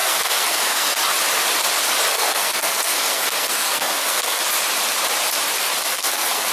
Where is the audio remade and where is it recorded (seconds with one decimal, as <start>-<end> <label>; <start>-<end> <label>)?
0.0-1.0 remade; 1.0-2.1 recorded; 2.1-4.4 remade; 4.4-5.9 recorded; 5.9-6.5 remade